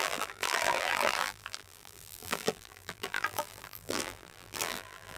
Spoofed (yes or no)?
yes